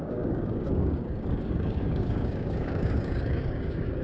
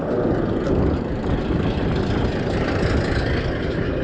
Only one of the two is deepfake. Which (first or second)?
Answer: first